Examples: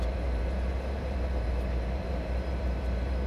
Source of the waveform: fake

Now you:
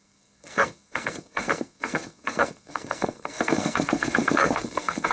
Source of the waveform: fake